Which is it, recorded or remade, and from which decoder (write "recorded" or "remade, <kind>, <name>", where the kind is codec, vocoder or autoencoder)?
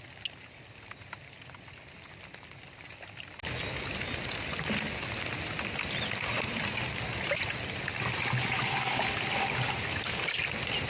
recorded